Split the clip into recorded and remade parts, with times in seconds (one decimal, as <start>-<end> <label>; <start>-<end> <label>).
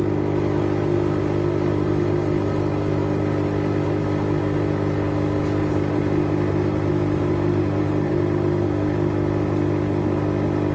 0.0-5.6 recorded; 5.6-8.2 remade; 8.2-10.7 recorded